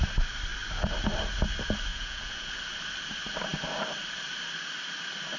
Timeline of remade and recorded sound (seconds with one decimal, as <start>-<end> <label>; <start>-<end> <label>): 0.0-1.9 recorded; 1.9-2.5 remade; 2.5-5.4 recorded